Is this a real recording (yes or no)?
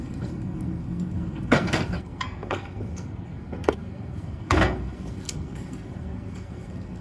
no